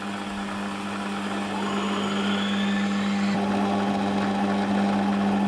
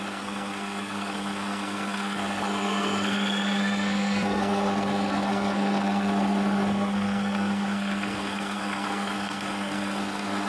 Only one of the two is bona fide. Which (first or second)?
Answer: first